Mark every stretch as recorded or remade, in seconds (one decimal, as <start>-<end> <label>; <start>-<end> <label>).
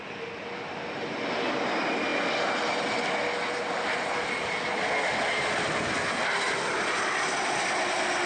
0.0-8.3 recorded